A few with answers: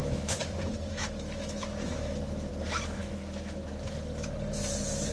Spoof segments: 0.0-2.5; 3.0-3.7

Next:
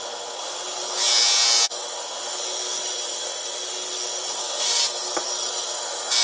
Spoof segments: 4.4-5.1

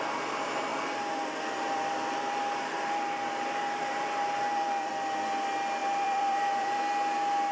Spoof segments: 0.7-4.9; 5.8-6.8

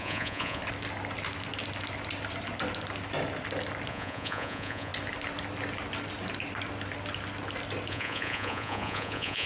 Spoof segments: 0.0-0.6; 3.9-4.9; 7.9-9.5

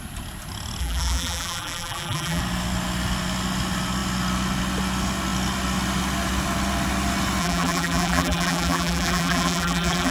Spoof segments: 0.8-2.4; 7.4-10.1